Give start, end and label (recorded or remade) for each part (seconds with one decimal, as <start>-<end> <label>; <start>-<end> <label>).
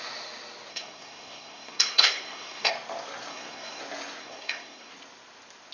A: 0.0-0.7 recorded; 0.7-2.7 remade; 2.7-3.3 recorded; 3.3-3.8 remade; 3.8-4.2 recorded; 4.2-4.9 remade; 4.9-5.7 recorded